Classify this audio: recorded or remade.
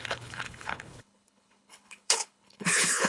remade